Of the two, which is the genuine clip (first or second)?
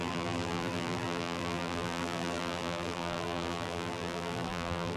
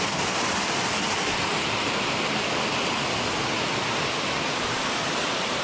second